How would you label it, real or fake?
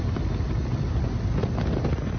real